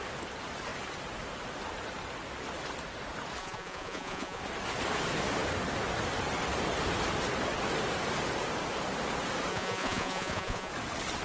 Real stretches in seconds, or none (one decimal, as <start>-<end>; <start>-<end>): 0.0-3.4; 4.4-9.5; 10.7-11.2